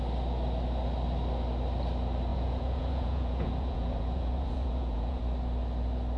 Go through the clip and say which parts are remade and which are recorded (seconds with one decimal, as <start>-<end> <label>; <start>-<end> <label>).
0.0-2.3 recorded; 2.3-5.2 remade; 5.2-6.2 recorded